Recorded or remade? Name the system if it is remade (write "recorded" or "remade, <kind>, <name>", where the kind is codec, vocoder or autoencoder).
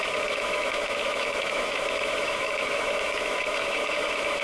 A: remade, autoencoder, DAC-VAE